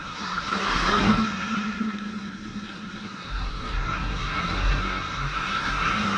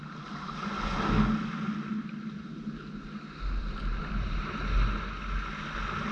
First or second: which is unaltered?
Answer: second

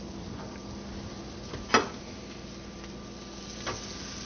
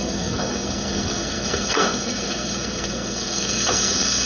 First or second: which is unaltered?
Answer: first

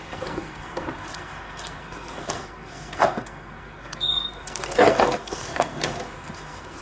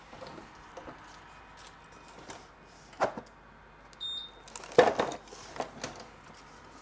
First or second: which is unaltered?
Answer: second